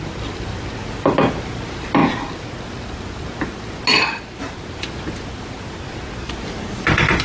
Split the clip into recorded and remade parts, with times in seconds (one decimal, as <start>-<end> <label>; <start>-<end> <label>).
0.0-7.2 recorded